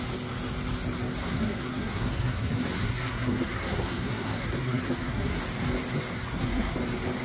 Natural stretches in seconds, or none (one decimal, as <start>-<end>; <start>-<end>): 0.0-1.2; 5.4-6.3; 6.8-7.2